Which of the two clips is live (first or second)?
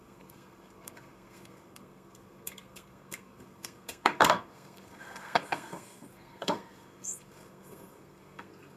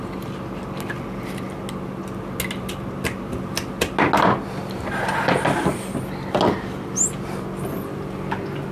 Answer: second